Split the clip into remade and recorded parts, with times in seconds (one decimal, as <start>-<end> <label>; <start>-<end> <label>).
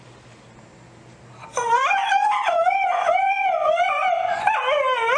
0.0-1.5 recorded; 1.5-4.6 remade; 4.6-5.2 recorded